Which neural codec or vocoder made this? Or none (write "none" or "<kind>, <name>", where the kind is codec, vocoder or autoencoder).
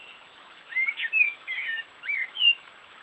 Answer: autoencoder, DAC-VAE